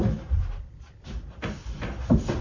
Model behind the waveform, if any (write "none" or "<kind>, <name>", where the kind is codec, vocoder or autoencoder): none